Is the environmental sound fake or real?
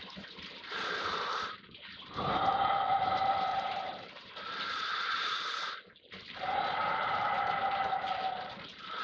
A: fake